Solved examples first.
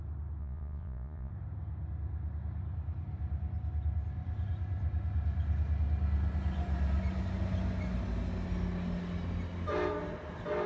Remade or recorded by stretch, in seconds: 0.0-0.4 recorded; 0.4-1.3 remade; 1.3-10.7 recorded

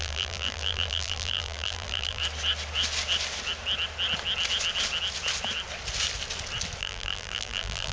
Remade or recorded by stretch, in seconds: 0.0-2.2 remade; 2.2-6.8 recorded; 6.8-7.9 remade

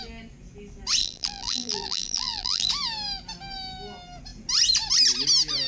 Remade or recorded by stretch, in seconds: 0.0-1.0 recorded; 1.0-2.7 remade; 2.7-5.7 recorded

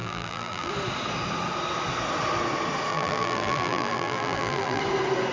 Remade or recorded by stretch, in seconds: 0.0-0.7 remade; 0.7-2.9 recorded; 2.9-4.8 remade; 4.8-5.3 recorded

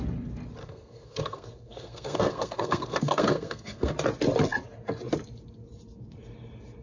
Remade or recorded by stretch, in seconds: 0.0-0.6 recorded; 0.6-3.9 remade; 3.9-6.8 recorded